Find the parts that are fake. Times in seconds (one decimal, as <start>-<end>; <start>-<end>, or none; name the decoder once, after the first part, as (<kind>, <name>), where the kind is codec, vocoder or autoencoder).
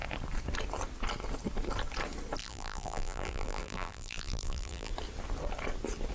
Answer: 2.4-4.9 (vocoder, BigVGAN v2)